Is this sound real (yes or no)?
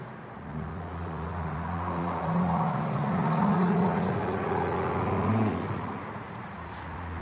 no